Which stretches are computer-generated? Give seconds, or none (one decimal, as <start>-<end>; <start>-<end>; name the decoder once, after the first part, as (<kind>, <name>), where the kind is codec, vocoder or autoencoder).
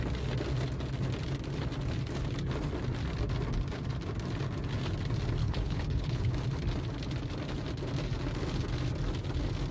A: 5.4-6.3 (codec, HILCodec)